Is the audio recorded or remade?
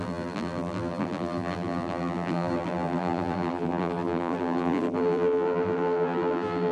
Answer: remade